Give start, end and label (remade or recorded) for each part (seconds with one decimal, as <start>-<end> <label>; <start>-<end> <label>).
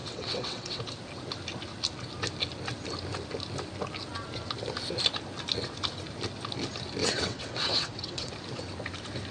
0.0-0.8 remade; 0.8-7.0 recorded; 7.0-8.3 remade; 8.3-9.3 recorded